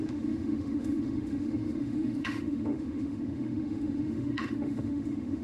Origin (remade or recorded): remade